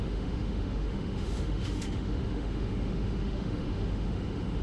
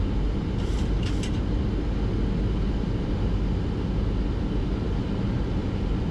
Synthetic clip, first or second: first